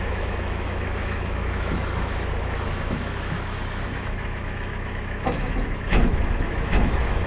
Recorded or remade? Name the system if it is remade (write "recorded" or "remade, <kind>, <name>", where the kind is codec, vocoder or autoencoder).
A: remade, autoencoder, DAC-VAE